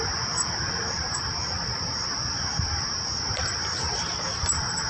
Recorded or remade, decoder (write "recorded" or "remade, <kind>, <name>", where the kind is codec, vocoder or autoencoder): remade, vocoder, BigVGAN v2